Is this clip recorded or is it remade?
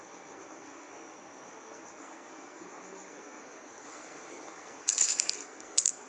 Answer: remade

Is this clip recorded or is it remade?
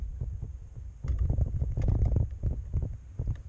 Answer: recorded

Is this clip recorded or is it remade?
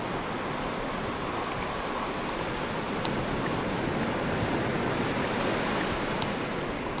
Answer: recorded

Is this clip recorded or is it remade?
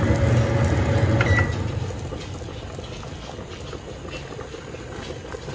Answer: recorded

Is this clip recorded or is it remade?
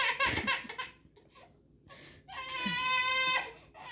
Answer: recorded